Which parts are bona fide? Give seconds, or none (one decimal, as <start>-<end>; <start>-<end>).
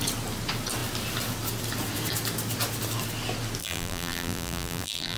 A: 0.0-3.6